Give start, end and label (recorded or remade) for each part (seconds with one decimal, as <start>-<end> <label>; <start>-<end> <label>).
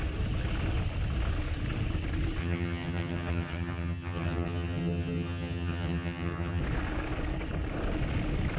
0.0-2.4 recorded; 2.4-6.6 remade; 6.6-8.6 recorded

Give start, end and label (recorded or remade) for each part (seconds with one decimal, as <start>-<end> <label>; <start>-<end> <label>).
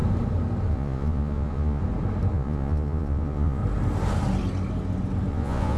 0.0-0.7 recorded; 0.7-1.8 remade; 1.8-2.3 recorded; 2.3-3.6 remade; 3.6-5.3 recorded; 5.3-5.8 remade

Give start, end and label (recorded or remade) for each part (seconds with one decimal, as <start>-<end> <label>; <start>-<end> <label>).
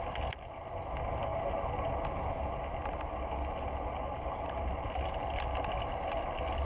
0.0-6.6 recorded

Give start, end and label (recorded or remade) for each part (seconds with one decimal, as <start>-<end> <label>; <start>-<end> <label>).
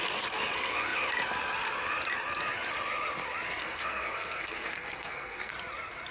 0.0-3.6 recorded; 3.6-5.5 remade; 5.5-6.1 recorded